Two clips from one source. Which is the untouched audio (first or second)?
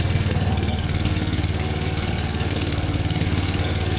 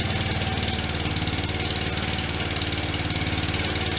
second